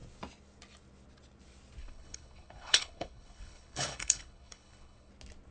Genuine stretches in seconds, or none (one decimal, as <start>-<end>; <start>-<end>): 0.0-1.8; 5.1-5.5